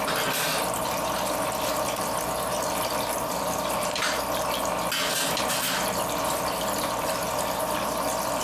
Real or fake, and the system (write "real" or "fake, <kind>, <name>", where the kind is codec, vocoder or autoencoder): real